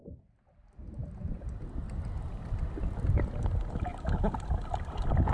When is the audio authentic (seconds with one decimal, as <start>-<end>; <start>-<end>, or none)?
0.0-5.3